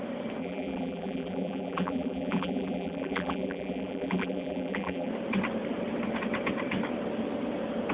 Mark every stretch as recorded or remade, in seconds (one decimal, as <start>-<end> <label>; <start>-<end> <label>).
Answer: 0.0-0.4 recorded; 0.4-5.1 remade; 5.1-7.9 recorded